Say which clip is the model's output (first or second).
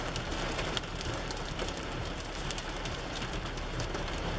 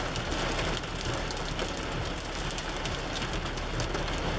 first